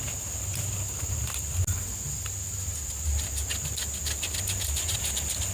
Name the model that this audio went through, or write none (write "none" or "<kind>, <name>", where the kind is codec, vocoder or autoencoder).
none